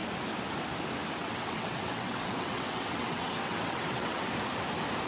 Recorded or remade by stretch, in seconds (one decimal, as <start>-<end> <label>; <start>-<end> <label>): 0.0-1.2 recorded; 1.2-4.3 remade; 4.3-5.1 recorded